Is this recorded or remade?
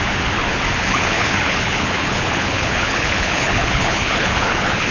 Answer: remade